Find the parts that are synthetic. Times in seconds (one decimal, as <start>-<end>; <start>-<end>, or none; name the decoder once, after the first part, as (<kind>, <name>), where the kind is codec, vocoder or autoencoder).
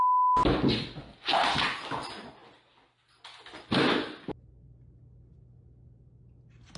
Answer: none